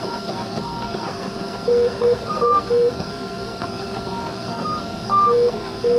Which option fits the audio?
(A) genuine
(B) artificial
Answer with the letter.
B